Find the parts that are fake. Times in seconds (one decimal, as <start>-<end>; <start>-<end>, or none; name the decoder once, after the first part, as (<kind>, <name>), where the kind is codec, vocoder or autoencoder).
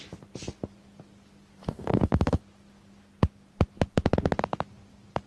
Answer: 1.6-2.4 (codec, DAC)